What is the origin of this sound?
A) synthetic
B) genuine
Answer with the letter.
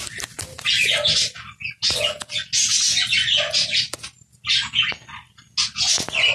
B